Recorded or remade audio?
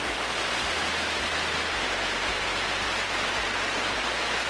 recorded